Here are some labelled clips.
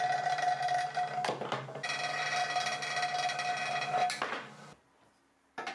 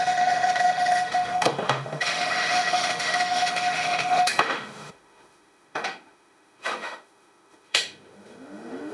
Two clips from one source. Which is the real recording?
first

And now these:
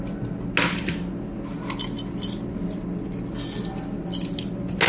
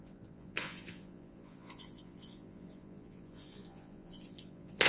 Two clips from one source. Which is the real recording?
first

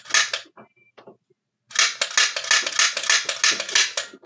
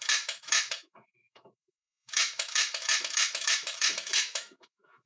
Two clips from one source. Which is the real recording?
first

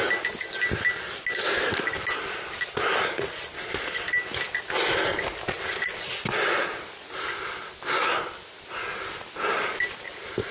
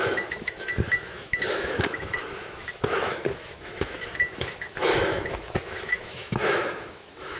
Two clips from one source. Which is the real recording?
first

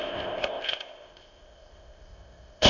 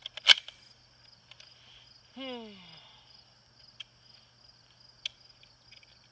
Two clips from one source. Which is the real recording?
second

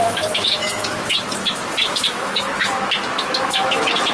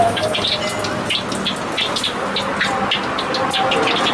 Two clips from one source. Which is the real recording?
second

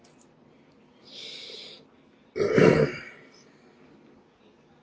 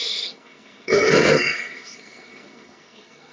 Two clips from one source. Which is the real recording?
first